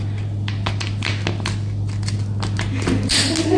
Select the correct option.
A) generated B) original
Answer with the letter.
B